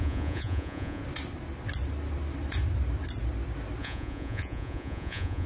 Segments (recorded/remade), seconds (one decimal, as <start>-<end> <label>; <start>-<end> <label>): 0.0-1.0 remade; 1.0-3.8 recorded; 3.8-5.5 remade